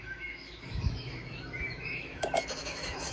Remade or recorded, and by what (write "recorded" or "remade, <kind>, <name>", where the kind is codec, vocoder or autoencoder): remade, autoencoder, DAC-VAE